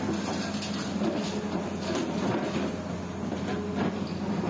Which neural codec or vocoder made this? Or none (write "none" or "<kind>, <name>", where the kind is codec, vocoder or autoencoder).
none